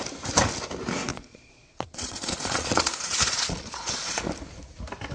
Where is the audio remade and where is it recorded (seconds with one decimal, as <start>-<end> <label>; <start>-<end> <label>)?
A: 0.0-1.1 recorded; 1.1-4.2 remade; 4.2-5.1 recorded